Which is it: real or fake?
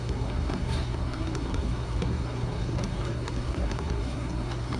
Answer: fake